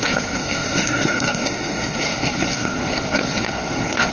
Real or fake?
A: fake